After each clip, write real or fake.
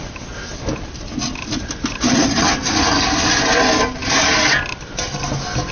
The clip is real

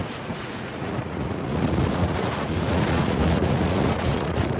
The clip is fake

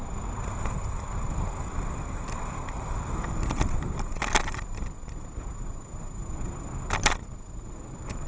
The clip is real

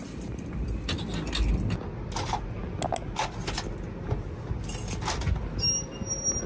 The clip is real